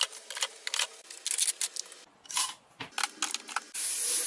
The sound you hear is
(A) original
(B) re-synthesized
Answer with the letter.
A